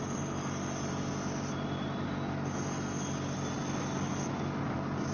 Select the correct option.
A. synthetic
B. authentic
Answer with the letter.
B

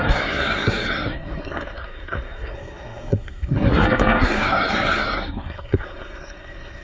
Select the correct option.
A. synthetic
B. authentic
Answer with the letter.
A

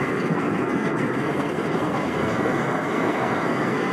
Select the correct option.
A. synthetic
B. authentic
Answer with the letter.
A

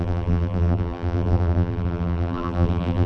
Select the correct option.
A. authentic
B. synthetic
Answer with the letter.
B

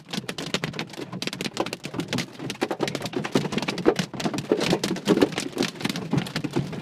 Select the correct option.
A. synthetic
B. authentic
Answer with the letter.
B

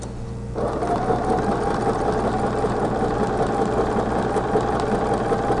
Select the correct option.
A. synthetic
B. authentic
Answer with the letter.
B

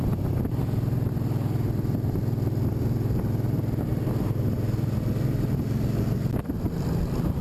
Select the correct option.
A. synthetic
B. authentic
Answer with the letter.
B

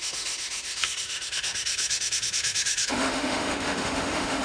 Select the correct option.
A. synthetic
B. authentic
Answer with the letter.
A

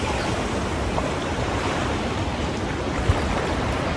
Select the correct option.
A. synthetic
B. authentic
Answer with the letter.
B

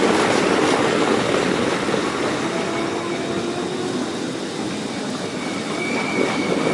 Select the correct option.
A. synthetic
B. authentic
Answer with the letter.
B